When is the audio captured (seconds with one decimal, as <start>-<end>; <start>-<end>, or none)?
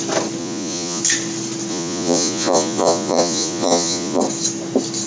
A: 0.0-0.4; 1.0-1.7; 4.2-5.1